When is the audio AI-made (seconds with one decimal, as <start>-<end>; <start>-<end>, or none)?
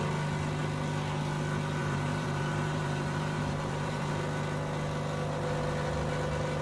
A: 1.8-4.1